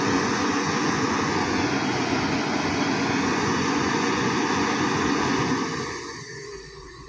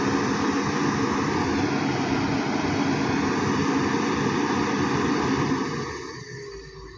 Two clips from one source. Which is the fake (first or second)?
first